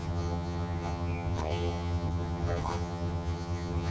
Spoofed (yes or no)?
yes